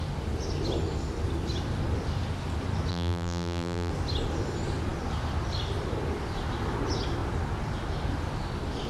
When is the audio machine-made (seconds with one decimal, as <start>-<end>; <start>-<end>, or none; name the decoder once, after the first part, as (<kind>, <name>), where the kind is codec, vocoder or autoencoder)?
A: 2.9-3.9 (vocoder, BigVGAN v2)